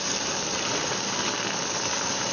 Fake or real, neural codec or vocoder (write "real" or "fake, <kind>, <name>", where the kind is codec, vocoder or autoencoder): fake, vocoder, BigVGAN v2